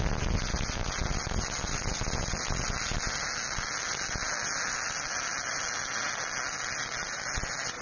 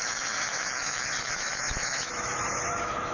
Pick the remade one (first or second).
second